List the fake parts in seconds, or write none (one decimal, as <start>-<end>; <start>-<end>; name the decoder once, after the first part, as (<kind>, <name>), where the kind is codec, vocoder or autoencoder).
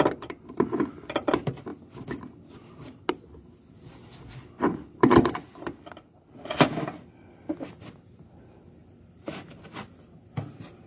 4.7-5.6 (vocoder, BigVGAN v2); 8.8-9.6